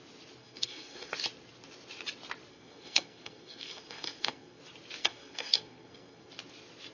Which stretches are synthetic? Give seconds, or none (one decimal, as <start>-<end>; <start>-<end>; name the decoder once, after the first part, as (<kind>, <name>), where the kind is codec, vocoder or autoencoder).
0.4-1.1 (codec, SNAC); 2.5-4.6; 5.0-6.3